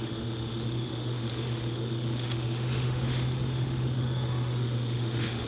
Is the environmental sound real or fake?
fake